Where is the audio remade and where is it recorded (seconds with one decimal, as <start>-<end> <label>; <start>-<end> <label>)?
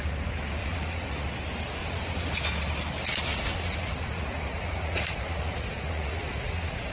0.0-0.6 recorded; 0.6-1.3 remade; 1.3-1.8 recorded; 1.8-2.4 remade; 2.4-3.3 recorded; 3.3-6.9 remade